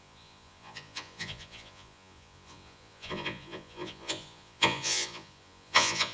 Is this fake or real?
fake